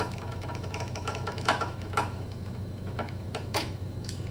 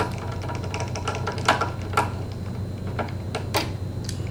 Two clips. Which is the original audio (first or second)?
second